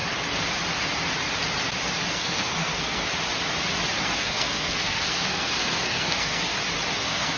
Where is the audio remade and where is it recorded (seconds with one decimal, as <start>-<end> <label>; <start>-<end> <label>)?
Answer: 0.0-2.1 recorded; 2.1-3.1 remade; 3.1-4.0 recorded; 4.0-6.5 remade; 6.5-7.0 recorded; 7.0-7.4 remade